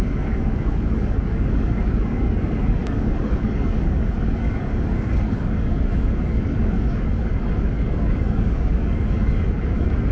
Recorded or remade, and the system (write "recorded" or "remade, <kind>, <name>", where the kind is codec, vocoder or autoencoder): remade, codec, DAC